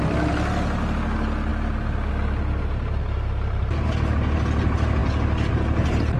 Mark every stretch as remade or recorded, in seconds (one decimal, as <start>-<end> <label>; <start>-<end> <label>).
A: 0.0-6.2 recorded